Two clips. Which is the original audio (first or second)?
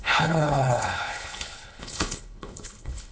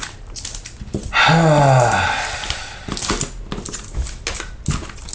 second